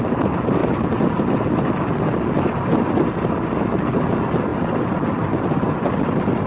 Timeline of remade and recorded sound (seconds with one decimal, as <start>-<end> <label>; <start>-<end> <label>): 0.0-6.5 recorded